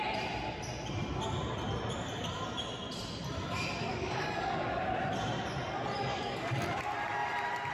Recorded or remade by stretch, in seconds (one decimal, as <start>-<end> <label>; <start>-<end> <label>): 0.0-3.9 recorded; 3.9-4.7 remade; 4.7-6.1 recorded; 6.1-6.8 remade; 6.8-7.7 recorded